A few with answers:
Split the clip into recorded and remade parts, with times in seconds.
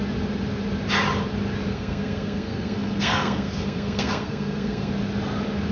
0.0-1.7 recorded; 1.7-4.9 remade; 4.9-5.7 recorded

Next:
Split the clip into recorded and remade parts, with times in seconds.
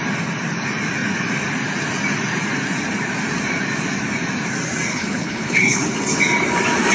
0.0-4.9 recorded; 4.9-5.9 remade; 5.9-6.9 recorded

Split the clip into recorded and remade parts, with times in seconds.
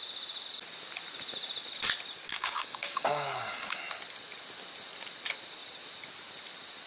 0.0-2.3 recorded; 2.3-3.8 remade; 3.8-6.9 recorded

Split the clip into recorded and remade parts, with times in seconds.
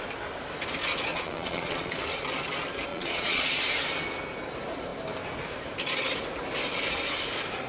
0.0-1.1 recorded; 1.1-2.0 remade; 2.0-2.9 recorded; 2.9-3.6 remade; 3.6-7.7 recorded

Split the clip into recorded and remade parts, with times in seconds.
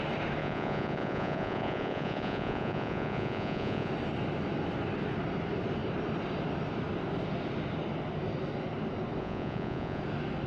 0.0-0.4 recorded; 0.4-3.9 remade; 3.9-9.2 recorded; 9.2-10.0 remade; 10.0-10.5 recorded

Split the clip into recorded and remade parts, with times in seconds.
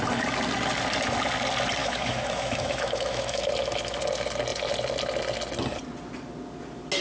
0.0-1.8 recorded; 1.8-3.4 remade; 3.4-7.0 recorded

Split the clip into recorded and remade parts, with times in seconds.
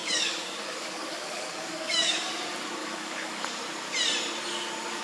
0.0-2.3 remade; 2.3-2.8 recorded; 2.8-3.6 remade; 3.6-5.0 recorded